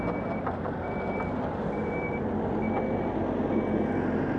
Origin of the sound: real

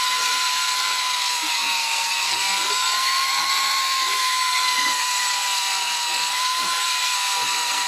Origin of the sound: fake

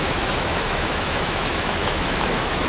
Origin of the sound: fake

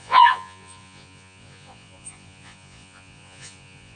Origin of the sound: fake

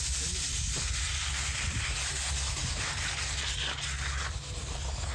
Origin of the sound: real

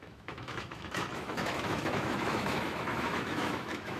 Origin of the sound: fake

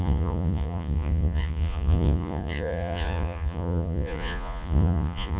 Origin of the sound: fake